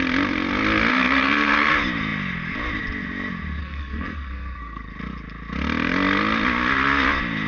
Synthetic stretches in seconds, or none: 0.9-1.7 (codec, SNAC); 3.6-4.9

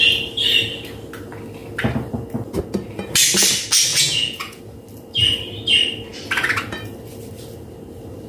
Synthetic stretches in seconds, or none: 3.9-4.6 (vocoder, Vocos)

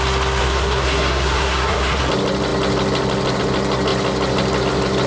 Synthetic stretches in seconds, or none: 0.4-2.0 (codec, SNAC)

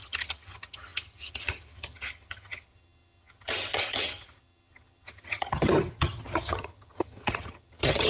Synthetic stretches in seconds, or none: 0.0-8.1 (vocoder, HiFi-GAN)